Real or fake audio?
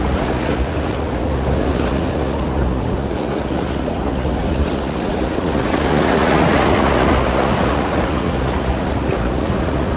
fake